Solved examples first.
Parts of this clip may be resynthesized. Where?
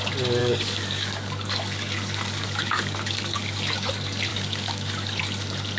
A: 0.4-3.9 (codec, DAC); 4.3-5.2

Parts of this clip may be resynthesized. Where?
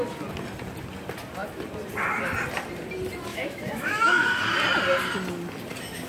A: 3.3-4.4 (autoencoder, DAC-VAE)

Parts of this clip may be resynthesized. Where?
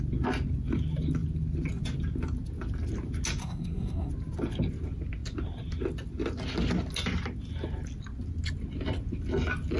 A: 3.4-4.1 (codec, SNAC)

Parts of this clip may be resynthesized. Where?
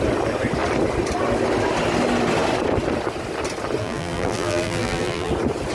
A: 3.8-5.3 (vocoder, BigVGAN v2)